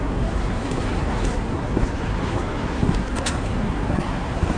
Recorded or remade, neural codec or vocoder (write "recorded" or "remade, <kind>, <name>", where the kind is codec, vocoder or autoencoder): remade, codec, SNAC